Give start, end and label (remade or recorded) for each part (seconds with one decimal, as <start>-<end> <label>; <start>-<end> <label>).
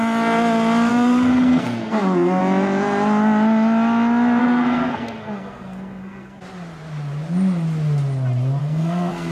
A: 0.0-0.9 recorded; 0.9-2.4 remade; 2.4-4.4 recorded; 4.4-6.4 remade; 6.4-8.6 recorded; 8.6-9.3 remade